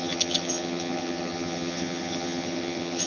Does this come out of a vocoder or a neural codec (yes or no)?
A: yes